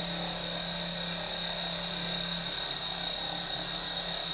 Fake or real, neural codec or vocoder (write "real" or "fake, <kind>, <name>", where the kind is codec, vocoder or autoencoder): real